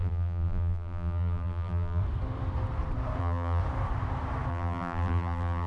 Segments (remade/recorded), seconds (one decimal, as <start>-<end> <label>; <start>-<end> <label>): 0.0-2.0 remade; 2.0-3.2 recorded; 3.2-3.6 remade; 3.6-4.5 recorded; 4.5-5.7 remade